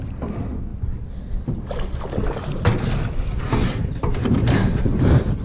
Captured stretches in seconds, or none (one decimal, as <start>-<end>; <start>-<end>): 0.0-5.4